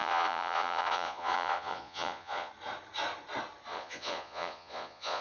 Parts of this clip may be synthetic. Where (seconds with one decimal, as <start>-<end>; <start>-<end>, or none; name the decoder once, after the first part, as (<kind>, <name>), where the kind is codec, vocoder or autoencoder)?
0.0-2.5 (vocoder, Vocos); 3.7-5.2